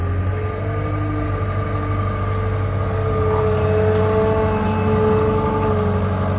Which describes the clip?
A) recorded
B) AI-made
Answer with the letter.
A